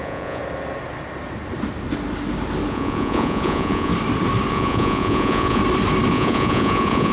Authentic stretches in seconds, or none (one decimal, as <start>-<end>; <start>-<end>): 0.4-2.7; 3.9-4.5; 5.6-6.1